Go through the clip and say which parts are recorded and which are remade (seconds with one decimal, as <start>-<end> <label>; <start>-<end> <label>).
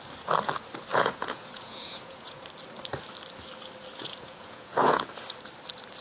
0.0-0.9 recorded; 0.9-2.5 remade; 2.5-4.0 recorded; 4.0-5.1 remade; 5.1-6.0 recorded